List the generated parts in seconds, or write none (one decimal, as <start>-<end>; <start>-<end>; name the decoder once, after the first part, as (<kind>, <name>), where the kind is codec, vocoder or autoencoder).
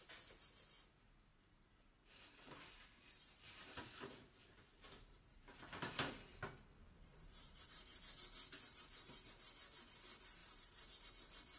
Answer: 1.3-6.1 (vocoder, BigVGAN v2); 6.8-8.0; 8.7-9.3; 10.4-11.0